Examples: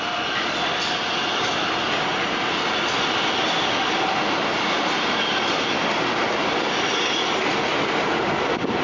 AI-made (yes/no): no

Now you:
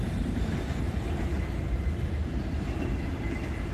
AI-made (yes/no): yes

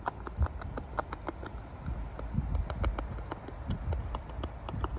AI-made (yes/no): no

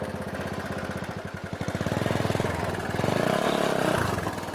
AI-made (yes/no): no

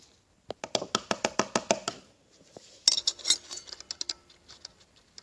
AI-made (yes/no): no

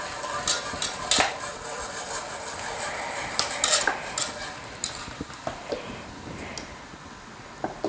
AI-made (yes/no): no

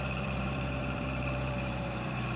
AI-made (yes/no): yes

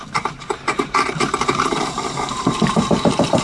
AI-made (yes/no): yes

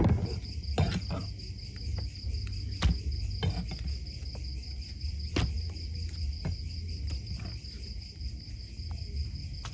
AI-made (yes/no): no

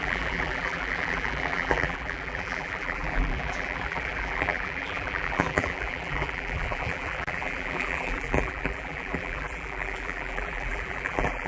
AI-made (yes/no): yes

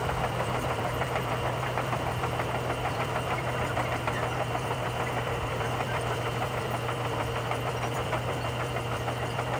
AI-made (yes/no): yes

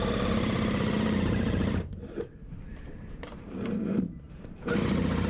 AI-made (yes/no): yes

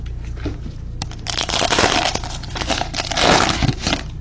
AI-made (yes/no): no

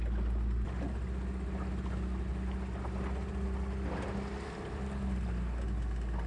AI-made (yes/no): no